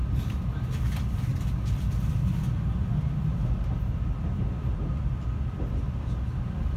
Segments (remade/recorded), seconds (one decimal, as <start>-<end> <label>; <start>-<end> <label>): 0.0-6.8 recorded